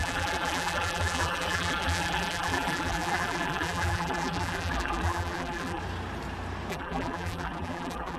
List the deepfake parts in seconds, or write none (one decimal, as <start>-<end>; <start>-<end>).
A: 0.0-5.8; 6.7-8.2